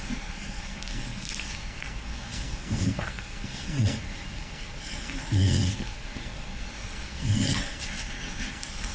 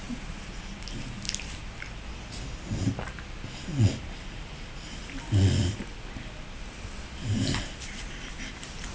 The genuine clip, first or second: second